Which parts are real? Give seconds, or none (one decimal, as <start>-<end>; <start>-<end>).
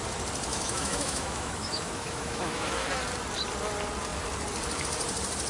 0.0-0.5; 2.9-5.5